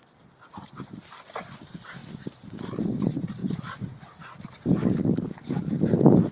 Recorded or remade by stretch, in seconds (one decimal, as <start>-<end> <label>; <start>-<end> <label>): 0.0-6.3 recorded